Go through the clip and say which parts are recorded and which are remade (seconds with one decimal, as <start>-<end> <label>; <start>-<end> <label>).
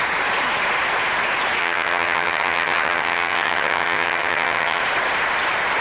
0.0-1.6 recorded; 1.6-4.8 remade; 4.8-5.8 recorded